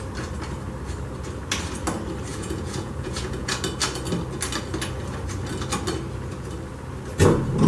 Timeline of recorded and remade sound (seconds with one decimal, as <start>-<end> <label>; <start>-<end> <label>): 0.0-2.3 recorded; 2.3-3.6 remade; 3.6-7.7 recorded